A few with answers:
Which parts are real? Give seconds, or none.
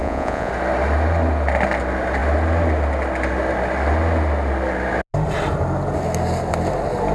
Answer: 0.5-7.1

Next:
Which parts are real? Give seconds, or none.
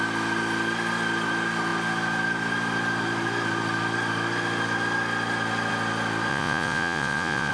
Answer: 0.0-6.3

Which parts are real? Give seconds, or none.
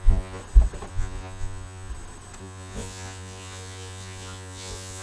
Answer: 0.4-0.9; 1.9-2.4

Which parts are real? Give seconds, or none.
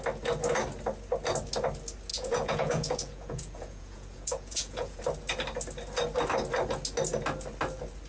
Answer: 0.0-2.1; 5.0-8.1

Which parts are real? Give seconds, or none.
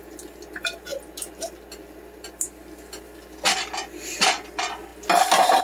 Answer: 0.0-5.6